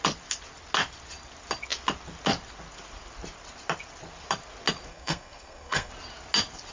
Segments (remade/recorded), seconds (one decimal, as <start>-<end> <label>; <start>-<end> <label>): 0.0-4.9 recorded; 4.9-5.9 remade; 5.9-6.7 recorded